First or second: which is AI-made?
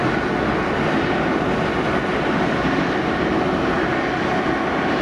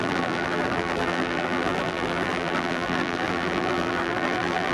second